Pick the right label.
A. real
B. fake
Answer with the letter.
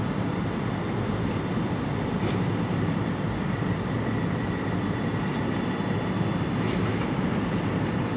A